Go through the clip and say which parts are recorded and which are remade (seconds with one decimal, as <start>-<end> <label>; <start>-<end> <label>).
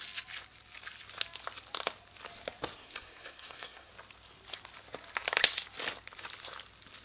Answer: 0.0-2.8 recorded; 2.8-3.9 remade; 3.9-7.0 recorded